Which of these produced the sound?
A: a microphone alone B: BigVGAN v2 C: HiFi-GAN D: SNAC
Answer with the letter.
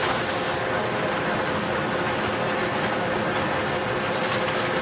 A